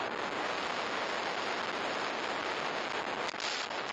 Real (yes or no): yes